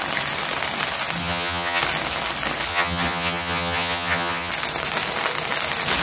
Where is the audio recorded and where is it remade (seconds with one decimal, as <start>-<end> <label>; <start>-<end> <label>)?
0.0-1.2 recorded; 1.2-1.8 remade; 1.8-2.7 recorded; 2.7-4.5 remade; 4.5-6.0 recorded